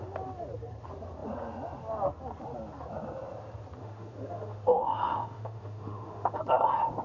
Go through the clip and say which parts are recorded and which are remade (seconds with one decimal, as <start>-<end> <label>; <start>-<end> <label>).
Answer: 0.0-3.8 recorded; 3.8-6.4 remade; 6.4-7.0 recorded